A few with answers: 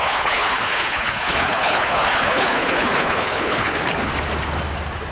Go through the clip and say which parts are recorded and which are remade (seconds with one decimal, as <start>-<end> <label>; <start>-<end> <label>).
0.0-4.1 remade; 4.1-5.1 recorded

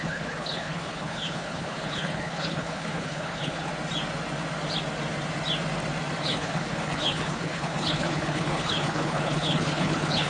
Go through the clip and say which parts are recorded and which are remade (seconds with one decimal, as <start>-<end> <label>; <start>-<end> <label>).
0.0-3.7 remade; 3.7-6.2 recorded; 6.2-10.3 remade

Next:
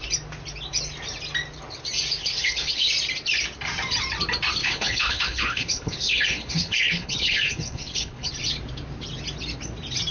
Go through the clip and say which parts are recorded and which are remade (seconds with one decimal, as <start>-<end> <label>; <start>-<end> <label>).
0.0-2.2 recorded; 2.2-2.9 remade; 2.9-4.6 recorded; 4.6-8.3 remade; 8.3-10.1 recorded

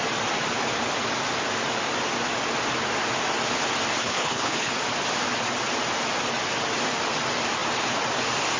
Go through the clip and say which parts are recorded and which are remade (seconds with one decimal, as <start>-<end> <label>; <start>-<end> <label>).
0.0-4.0 recorded; 4.0-4.7 remade; 4.7-8.6 recorded